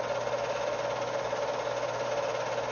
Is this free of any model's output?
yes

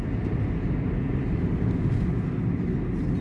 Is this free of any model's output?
yes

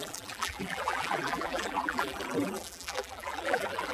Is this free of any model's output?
no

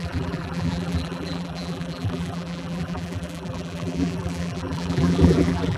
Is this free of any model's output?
no